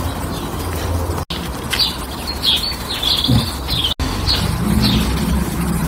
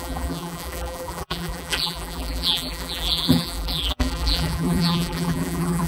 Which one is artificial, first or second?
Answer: second